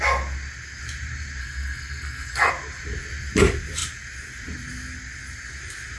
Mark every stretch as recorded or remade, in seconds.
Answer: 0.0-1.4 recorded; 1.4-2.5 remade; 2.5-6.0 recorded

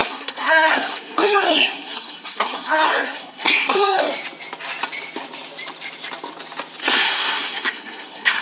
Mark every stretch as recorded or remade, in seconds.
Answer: 0.0-4.1 remade; 4.1-6.8 recorded; 6.8-8.4 remade

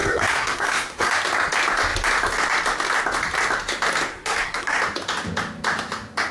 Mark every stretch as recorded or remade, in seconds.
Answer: 0.0-1.1 remade; 1.1-4.1 recorded; 4.1-4.8 remade; 4.8-6.3 recorded

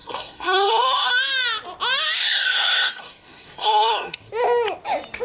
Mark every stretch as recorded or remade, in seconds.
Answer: 0.0-1.1 remade; 1.1-2.2 recorded; 2.2-4.3 remade; 4.3-5.2 recorded

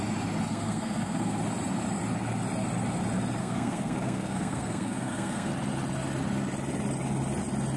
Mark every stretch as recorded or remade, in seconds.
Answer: 0.0-0.5 recorded; 0.5-1.4 remade; 1.4-3.4 recorded; 3.4-5.5 remade; 5.5-7.8 recorded

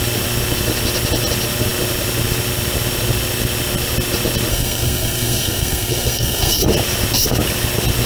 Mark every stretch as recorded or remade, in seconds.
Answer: 0.0-4.5 recorded; 4.5-6.6 remade; 6.6-8.1 recorded